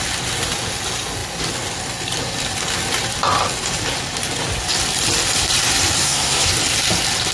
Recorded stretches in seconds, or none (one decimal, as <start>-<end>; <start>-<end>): 0.0-6.0; 6.5-7.3